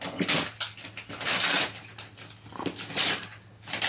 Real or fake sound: real